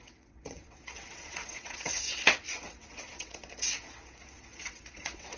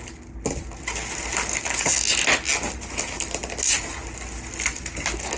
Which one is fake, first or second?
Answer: first